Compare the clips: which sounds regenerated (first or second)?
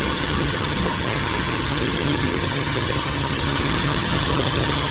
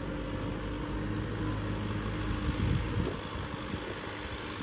first